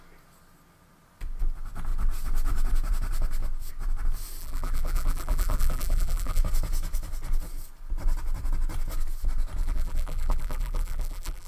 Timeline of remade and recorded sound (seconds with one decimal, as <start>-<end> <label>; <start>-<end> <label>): 0.0-4.4 recorded; 4.4-6.4 remade; 6.4-9.6 recorded; 9.6-11.5 remade